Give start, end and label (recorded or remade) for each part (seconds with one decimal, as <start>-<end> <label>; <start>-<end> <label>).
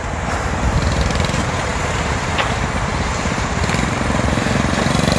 0.0-5.2 remade